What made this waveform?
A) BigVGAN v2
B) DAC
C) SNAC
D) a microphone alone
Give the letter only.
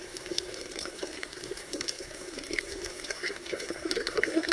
C